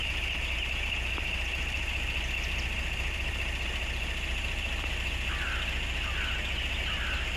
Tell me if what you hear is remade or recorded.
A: recorded